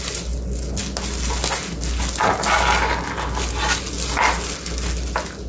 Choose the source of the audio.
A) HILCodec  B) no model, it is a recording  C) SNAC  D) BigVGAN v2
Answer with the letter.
B